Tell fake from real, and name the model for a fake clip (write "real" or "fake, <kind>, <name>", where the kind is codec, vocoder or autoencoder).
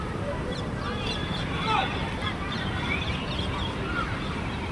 real